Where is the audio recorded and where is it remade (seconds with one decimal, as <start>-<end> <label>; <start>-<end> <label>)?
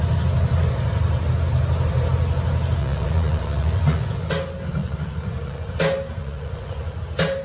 0.0-2.8 recorded; 2.8-4.3 remade; 4.3-4.8 recorded; 4.8-5.7 remade; 5.7-6.2 recorded; 6.2-7.0 remade; 7.0-7.4 recorded